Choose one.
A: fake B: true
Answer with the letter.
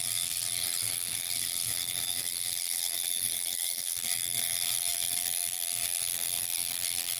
A